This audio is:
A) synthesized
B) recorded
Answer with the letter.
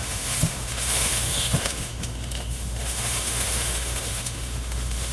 A